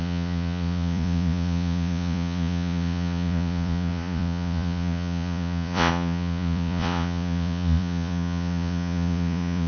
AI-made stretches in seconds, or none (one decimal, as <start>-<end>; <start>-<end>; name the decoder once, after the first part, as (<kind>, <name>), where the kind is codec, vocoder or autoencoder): 0.0-9.7 (vocoder, Vocos)

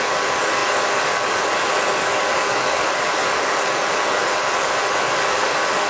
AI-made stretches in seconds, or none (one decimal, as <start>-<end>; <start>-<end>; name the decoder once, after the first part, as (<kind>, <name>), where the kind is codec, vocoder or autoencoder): 0.0-5.9 (codec, DAC)

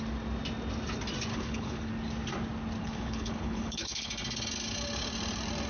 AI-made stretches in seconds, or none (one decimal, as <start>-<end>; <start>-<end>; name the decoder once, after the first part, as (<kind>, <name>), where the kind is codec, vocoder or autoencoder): 1.3-1.9 (codec, HILCodec); 2.8-4.1

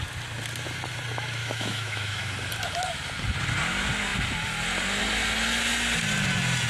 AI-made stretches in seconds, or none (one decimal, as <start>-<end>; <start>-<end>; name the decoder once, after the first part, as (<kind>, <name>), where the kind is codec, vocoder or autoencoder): 1.4-2.2 (autoencoder, DAC-VAE)

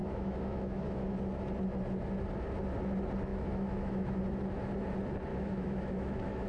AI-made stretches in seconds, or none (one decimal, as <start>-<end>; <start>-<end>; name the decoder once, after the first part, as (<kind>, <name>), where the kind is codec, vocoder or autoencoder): 0.0-1.1 (autoencoder, DAC-VAE); 3.3-4.2; 5.3-6.5

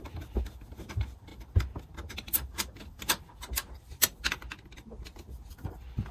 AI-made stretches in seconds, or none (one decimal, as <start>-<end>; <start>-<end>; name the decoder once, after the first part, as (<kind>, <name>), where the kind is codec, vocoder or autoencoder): none

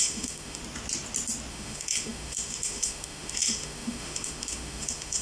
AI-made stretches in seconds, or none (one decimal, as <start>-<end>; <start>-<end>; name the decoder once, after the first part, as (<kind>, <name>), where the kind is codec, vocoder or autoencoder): 0.0-0.6 (autoencoder, DAC-VAE); 1.5-5.2

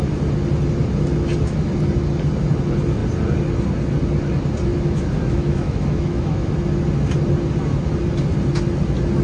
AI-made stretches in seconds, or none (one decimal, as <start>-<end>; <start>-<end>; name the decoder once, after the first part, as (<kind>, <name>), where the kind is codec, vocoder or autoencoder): 4.7-6.5 (autoencoder, DAC-VAE)